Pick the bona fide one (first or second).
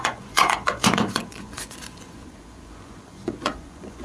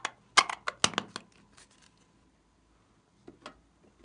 second